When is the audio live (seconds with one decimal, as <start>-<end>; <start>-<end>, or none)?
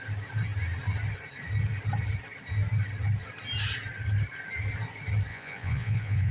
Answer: 0.0-5.3